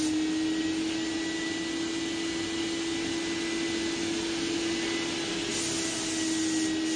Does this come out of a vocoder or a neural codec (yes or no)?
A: no